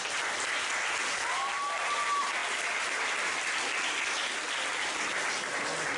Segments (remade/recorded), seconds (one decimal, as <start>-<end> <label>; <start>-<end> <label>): 0.0-6.0 recorded